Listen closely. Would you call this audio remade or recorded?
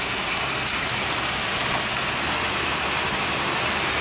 recorded